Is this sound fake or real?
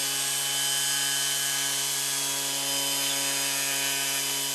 real